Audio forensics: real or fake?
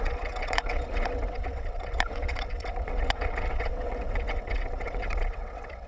fake